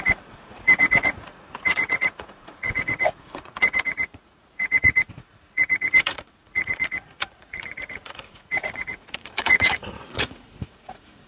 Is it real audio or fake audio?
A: fake